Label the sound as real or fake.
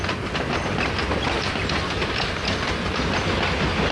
fake